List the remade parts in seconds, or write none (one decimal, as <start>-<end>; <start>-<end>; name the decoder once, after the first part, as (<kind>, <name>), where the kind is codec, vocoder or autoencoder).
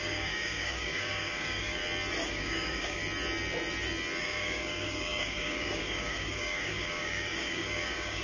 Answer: 0.0-1.8 (codec, DAC); 2.3-3.0; 4.2-8.2